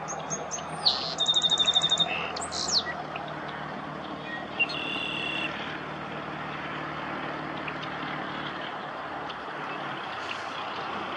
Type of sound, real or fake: real